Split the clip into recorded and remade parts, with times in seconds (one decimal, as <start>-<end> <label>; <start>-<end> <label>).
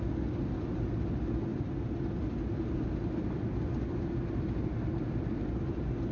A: 0.0-6.1 recorded